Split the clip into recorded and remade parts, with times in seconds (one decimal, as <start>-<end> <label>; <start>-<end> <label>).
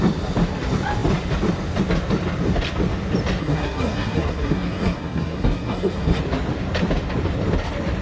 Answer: 0.0-3.4 recorded; 3.4-6.2 remade; 6.2-8.0 recorded